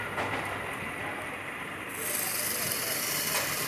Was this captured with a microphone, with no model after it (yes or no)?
yes